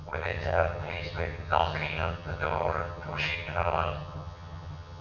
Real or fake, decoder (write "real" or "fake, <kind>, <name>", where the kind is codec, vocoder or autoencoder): fake, vocoder, HiFi-GAN